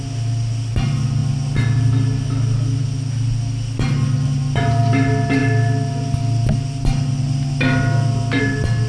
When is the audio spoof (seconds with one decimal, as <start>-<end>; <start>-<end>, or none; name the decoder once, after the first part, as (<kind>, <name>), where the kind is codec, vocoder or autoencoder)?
none